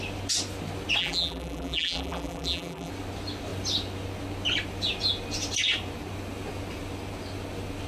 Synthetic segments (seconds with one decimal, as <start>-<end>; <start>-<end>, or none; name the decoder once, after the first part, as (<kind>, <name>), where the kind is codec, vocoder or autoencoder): 1.0-2.9 (vocoder, BigVGAN v2)